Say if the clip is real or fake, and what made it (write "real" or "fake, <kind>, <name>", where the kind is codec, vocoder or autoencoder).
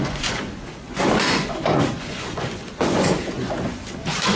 fake, vocoder, Vocos